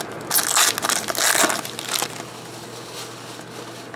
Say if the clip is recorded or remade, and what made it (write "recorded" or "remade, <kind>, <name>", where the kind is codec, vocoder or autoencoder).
recorded